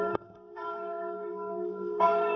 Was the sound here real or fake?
fake